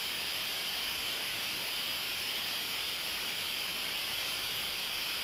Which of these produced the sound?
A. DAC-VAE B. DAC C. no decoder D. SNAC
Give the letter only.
B